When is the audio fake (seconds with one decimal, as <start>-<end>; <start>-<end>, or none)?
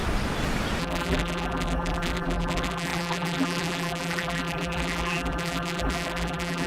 0.8-6.7